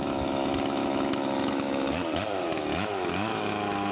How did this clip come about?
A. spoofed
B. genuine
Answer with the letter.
A